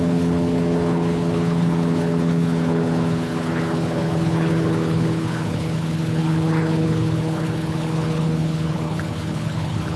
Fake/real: fake